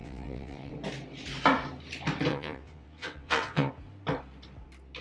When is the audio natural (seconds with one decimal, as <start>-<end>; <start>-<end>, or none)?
0.7-2.3; 3.7-5.0